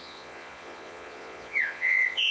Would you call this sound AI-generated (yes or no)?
yes